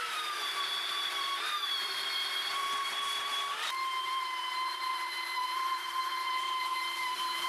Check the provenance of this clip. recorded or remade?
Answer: remade